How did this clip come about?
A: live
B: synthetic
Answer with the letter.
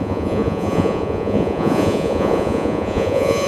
B